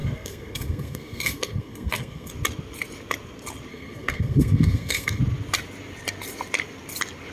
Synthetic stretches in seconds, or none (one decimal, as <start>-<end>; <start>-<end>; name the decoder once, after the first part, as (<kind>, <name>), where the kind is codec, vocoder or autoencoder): 0.0-2.3 (codec, SNAC); 3.7-5.2